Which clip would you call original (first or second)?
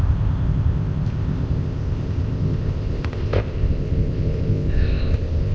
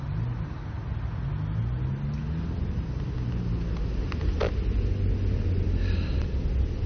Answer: second